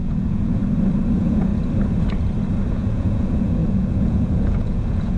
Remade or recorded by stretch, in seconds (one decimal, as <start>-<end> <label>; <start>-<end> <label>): 0.0-0.6 remade; 0.6-1.1 recorded; 1.1-1.5 remade; 1.5-2.7 recorded; 2.7-5.2 remade